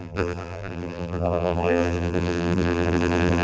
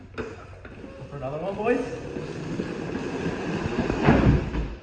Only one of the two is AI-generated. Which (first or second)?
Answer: first